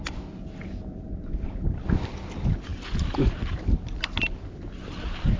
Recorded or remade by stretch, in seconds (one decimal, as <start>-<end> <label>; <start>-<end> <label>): 0.0-5.4 recorded